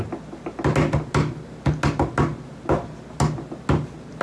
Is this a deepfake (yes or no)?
no